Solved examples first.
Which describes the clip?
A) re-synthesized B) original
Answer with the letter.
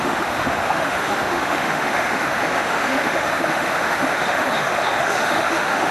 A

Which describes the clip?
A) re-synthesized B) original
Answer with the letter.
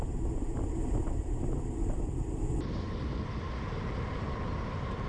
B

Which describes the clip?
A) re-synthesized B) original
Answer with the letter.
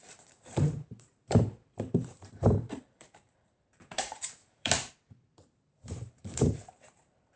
A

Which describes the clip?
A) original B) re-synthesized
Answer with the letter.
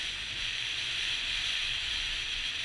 B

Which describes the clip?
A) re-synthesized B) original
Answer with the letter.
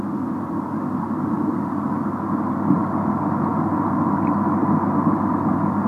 B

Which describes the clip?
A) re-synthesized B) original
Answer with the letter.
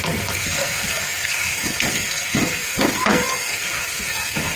A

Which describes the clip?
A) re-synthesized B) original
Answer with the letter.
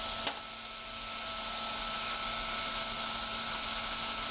B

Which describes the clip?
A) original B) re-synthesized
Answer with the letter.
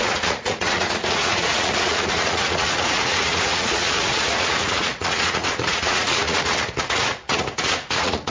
B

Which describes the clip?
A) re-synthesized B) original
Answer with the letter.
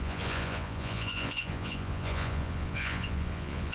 A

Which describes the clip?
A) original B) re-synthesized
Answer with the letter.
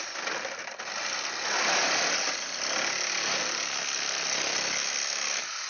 A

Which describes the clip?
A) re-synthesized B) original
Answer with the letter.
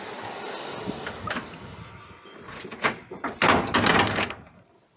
B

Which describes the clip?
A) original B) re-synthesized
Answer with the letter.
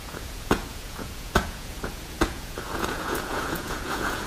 B